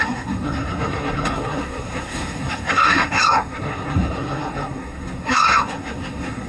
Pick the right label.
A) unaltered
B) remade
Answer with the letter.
B